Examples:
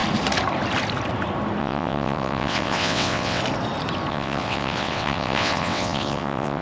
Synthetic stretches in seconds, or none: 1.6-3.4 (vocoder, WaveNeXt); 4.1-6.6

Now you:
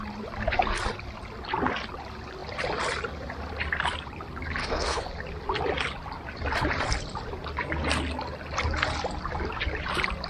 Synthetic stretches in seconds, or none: 4.6-5.1 (codec, SNAC)